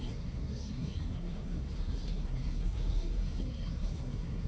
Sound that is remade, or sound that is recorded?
remade